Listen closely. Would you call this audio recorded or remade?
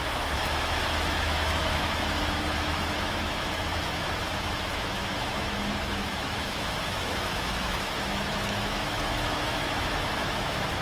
remade